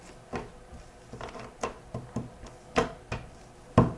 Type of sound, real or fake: real